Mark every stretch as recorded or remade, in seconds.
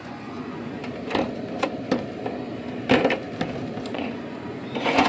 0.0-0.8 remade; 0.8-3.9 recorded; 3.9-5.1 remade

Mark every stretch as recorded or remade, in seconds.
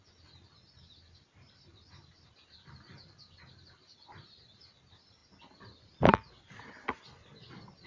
0.0-7.9 recorded